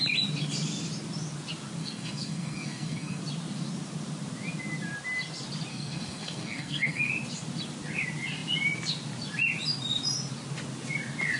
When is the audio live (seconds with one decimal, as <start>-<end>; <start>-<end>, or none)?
0.0-1.8; 3.2-5.7; 7.1-11.4

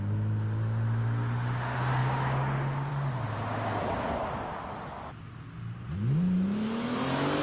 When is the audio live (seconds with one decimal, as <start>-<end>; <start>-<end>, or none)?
0.0-7.4